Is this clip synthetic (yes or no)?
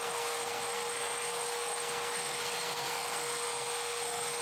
yes